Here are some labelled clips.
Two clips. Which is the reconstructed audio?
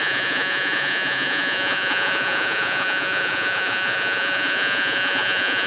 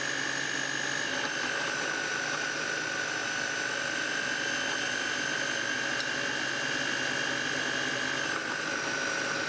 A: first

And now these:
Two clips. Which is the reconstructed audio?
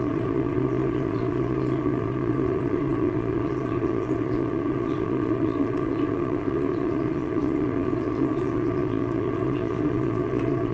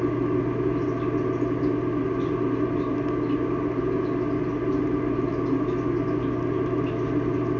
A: first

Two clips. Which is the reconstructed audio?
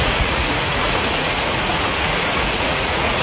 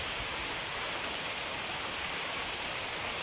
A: first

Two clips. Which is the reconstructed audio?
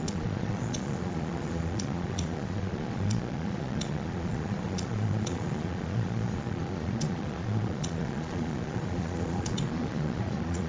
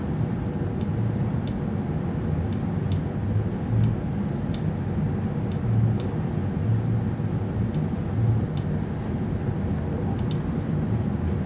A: first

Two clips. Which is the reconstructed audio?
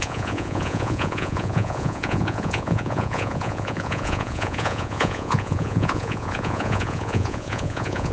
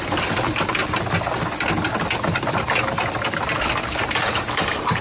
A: first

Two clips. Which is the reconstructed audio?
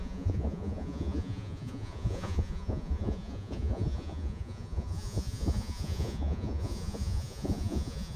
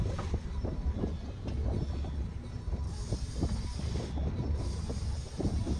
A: first